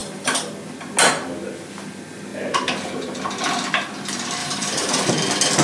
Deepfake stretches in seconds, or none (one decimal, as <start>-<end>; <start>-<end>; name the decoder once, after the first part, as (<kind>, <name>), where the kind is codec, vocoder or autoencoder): 0.0-0.5 (vocoder, BigVGAN v2); 4.4-5.1